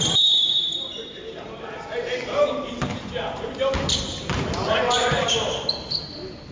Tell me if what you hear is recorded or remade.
recorded